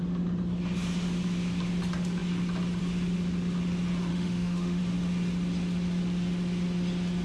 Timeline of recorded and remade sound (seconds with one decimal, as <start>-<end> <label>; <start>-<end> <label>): 0.0-4.1 recorded; 4.1-4.8 remade; 4.8-7.2 recorded